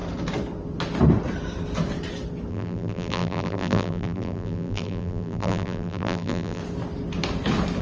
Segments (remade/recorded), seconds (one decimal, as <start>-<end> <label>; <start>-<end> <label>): 0.0-2.5 recorded; 2.5-6.6 remade; 6.6-7.8 recorded